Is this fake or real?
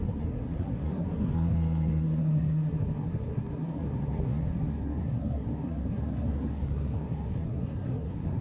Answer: fake